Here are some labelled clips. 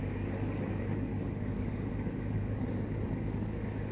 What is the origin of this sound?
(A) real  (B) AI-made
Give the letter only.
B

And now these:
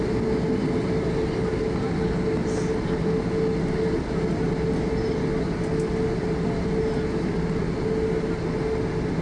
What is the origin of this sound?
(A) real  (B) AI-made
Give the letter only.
A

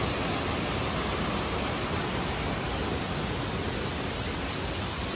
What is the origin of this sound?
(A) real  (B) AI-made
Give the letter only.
A